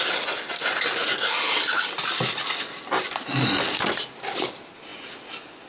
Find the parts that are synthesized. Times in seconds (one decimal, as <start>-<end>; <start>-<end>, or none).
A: none